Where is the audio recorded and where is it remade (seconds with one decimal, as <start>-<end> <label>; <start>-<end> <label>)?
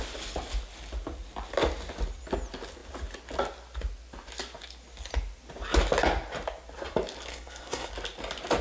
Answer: 0.0-7.3 recorded; 7.3-7.9 remade; 7.9-8.6 recorded